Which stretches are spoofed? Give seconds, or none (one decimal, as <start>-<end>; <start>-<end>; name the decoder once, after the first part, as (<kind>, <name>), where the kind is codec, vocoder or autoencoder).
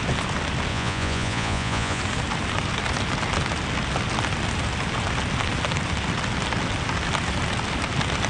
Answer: 0.7-2.0 (vocoder, Vocos)